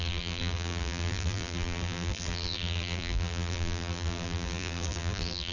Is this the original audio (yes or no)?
no